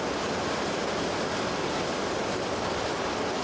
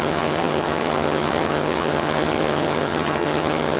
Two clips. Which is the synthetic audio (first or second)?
second